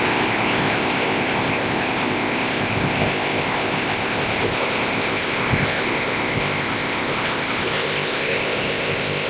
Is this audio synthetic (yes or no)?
yes